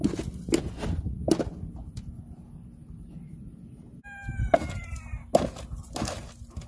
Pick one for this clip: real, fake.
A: real